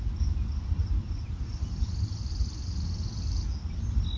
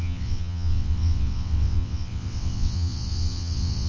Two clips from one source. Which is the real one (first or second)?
first